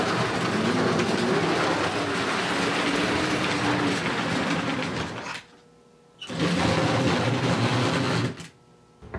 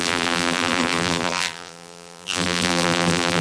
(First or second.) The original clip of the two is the first